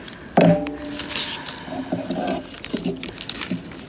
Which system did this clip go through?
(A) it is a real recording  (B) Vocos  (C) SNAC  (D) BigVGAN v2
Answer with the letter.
A